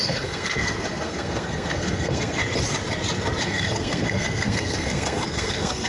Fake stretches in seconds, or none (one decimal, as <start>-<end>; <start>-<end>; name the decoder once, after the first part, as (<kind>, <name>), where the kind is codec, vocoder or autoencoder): 0.0-2.4 (codec, SNAC); 3.4-5.9